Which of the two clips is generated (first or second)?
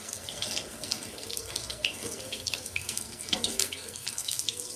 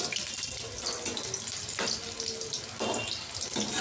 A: first